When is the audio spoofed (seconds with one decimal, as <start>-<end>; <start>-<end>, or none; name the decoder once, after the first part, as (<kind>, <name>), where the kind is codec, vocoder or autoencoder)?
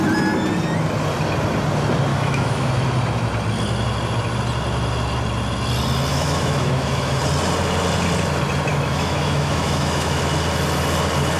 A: 2.1-2.7 (autoencoder, DAC-VAE); 6.1-7.2; 8.7-10.2